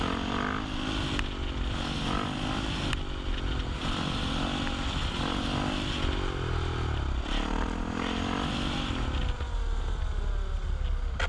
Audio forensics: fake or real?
real